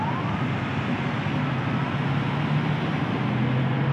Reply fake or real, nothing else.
real